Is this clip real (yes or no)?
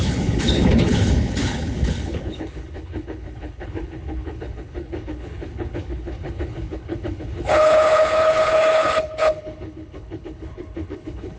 no